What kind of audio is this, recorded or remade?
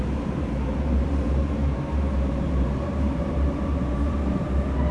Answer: remade